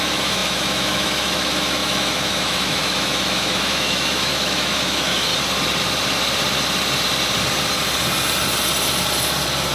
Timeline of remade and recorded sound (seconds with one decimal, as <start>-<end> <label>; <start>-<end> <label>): 0.0-5.3 remade; 5.3-9.7 recorded

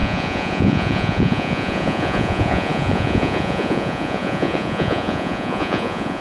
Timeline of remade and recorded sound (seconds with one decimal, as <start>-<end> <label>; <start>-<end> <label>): 0.0-6.2 remade

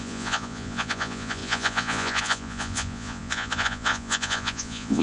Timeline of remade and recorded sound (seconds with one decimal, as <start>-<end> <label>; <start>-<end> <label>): 0.0-5.0 remade

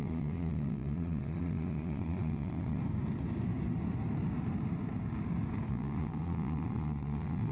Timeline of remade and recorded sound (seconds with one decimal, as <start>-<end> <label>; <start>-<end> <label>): 0.0-2.8 remade; 2.8-5.7 recorded; 5.7-7.5 remade